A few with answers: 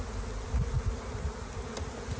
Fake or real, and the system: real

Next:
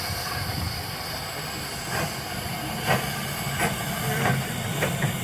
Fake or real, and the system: fake, vocoder, BigVGAN v2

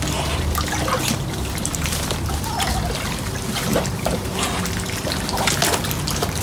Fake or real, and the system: real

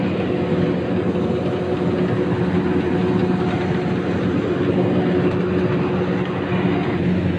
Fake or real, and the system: real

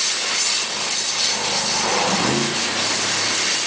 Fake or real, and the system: real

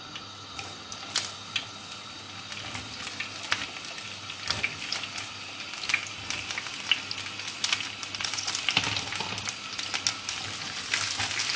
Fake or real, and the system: real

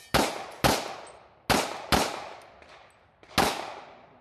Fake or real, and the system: real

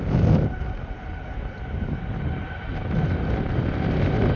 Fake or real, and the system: real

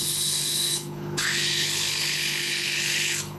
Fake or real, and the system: fake, codec, HILCodec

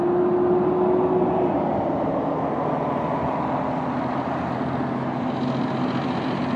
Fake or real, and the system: real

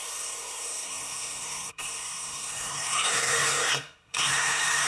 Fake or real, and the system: fake, codec, SNAC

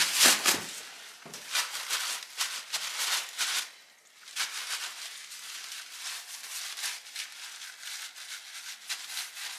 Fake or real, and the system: real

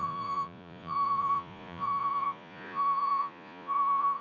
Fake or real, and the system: fake, vocoder, Vocos